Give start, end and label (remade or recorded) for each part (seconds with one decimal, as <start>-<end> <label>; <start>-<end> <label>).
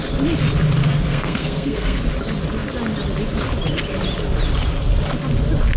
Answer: 0.0-0.8 recorded; 0.8-2.0 remade; 2.0-5.8 recorded